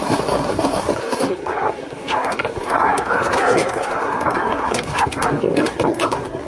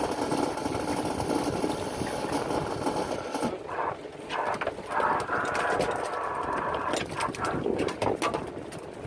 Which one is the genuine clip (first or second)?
second